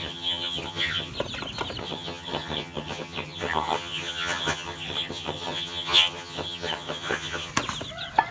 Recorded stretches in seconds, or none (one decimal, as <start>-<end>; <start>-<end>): 1.1-1.8; 7.5-8.3